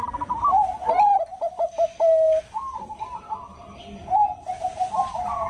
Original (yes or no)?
yes